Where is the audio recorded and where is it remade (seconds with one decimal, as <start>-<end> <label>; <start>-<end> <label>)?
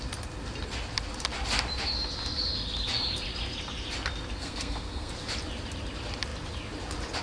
0.0-4.4 recorded; 4.4-5.1 remade; 5.1-7.2 recorded